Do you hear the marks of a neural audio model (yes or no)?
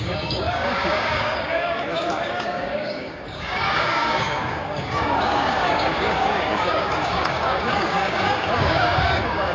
yes